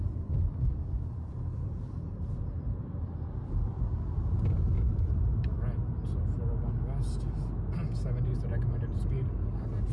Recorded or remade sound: recorded